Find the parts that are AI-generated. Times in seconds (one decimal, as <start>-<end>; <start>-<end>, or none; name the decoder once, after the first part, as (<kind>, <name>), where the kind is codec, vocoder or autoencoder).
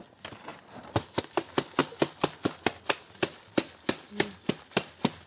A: none